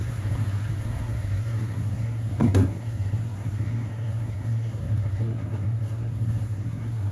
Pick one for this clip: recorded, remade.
remade